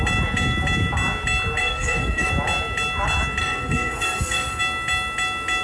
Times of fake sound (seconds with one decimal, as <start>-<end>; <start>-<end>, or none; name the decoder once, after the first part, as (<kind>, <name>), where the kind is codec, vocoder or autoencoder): 1.6-2.3 (codec, SNAC); 3.4-4.6